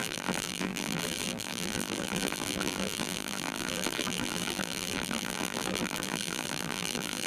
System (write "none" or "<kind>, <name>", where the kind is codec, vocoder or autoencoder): vocoder, BigVGAN v2